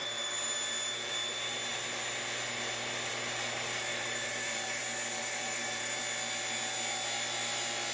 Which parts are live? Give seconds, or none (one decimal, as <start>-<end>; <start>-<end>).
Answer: 1.1-3.9; 4.8-5.2; 6.0-7.9